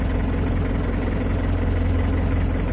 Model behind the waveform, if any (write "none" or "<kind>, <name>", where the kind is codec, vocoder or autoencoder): none